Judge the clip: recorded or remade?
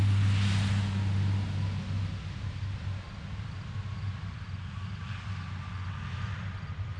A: recorded